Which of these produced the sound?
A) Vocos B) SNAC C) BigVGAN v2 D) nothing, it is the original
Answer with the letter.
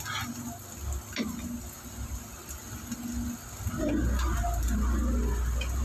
D